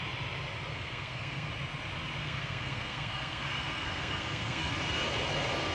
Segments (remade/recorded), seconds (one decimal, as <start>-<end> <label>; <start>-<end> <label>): 0.0-0.7 recorded; 0.7-1.5 remade; 1.5-2.2 recorded; 2.2-4.7 remade; 4.7-5.7 recorded